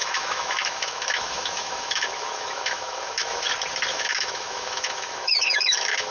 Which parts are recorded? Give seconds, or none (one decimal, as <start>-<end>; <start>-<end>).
3.5-3.9